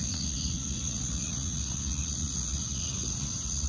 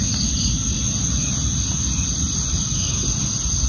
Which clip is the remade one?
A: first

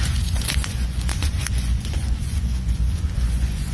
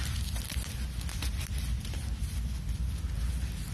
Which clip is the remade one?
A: first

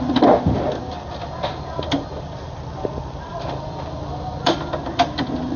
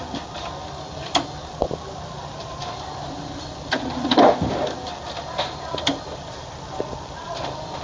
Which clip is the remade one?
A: second